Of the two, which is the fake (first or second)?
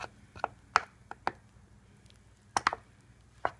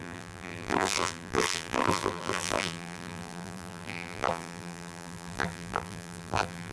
second